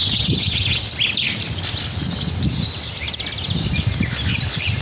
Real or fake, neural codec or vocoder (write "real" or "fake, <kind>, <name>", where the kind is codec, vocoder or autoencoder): fake, vocoder, BigVGAN v2